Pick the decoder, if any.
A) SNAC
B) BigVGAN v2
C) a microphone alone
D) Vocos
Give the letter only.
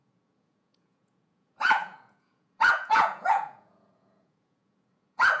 D